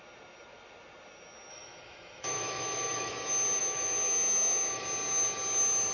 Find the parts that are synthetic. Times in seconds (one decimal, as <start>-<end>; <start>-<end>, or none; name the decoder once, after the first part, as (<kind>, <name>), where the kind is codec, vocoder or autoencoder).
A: 1.5-3.1 (autoencoder, DAC-VAE); 3.6-4.8